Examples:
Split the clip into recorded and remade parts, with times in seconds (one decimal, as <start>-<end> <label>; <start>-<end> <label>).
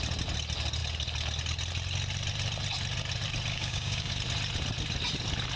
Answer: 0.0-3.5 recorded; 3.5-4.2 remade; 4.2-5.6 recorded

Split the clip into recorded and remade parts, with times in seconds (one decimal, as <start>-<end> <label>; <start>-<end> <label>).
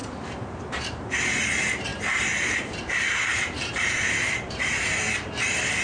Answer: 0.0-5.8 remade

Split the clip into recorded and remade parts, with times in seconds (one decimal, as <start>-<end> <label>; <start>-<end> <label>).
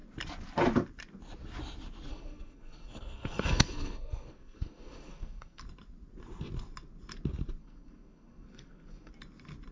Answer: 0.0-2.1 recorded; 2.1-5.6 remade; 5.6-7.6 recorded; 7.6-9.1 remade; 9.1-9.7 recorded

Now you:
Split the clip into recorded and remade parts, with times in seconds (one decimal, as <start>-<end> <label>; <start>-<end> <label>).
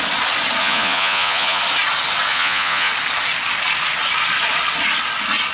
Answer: 0.0-0.6 recorded; 0.6-1.6 remade; 1.6-2.3 recorded; 2.3-2.9 remade; 2.9-5.5 recorded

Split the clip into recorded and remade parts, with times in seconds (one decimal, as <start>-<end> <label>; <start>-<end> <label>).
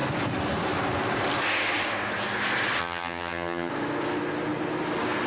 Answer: 0.0-2.8 recorded; 2.8-3.7 remade; 3.7-5.3 recorded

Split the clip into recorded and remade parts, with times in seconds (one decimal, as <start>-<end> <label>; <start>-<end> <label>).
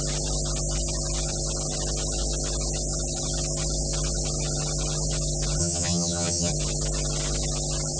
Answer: 0.0-5.6 recorded; 5.6-6.5 remade; 6.5-8.0 recorded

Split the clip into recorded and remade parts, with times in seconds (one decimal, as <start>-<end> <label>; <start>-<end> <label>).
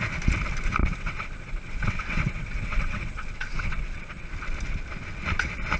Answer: 0.0-0.8 recorded; 0.8-4.3 remade; 4.3-5.8 recorded